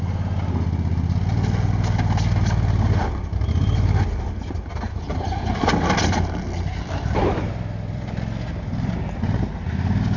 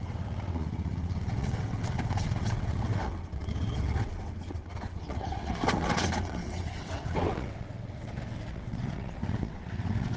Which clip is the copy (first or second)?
second